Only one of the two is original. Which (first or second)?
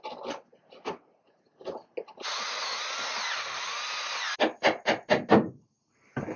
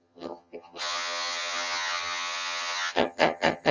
first